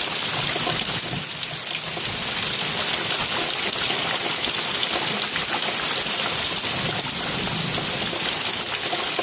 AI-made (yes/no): no